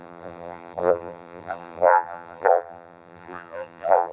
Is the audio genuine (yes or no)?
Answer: no